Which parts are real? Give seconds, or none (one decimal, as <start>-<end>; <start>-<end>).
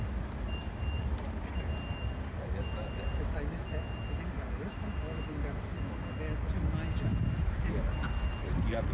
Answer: 0.0-0.6; 1.2-8.9